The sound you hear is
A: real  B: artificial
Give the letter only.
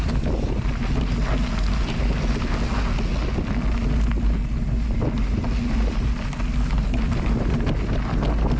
A